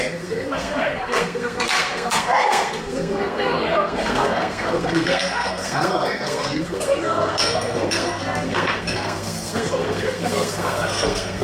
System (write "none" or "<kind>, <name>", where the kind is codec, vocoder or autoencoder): codec, SNAC